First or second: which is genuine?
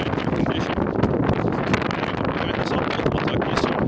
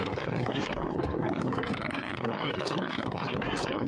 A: first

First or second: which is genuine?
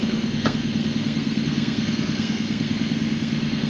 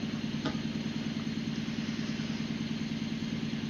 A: second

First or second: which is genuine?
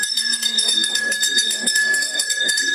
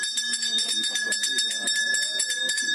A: second